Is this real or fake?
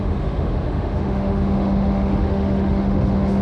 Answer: fake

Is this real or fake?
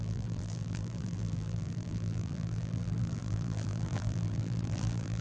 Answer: fake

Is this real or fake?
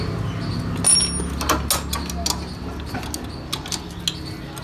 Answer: real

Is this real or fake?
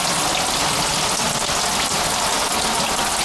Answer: real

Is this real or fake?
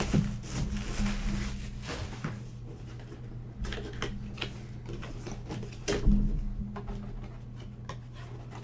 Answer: real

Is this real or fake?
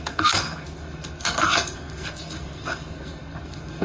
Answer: fake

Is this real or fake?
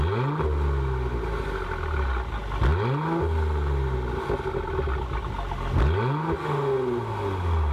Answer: real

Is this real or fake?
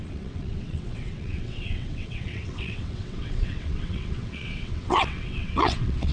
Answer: fake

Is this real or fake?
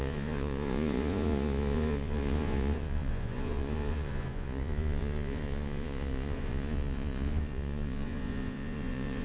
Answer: fake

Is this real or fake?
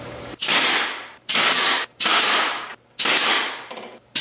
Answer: fake